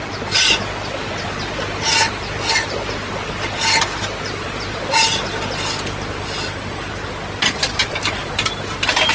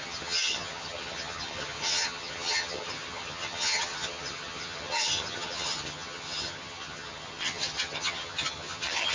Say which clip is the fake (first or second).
second